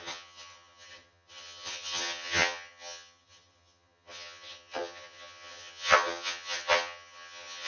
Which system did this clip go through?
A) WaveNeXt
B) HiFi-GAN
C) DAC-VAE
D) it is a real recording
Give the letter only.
B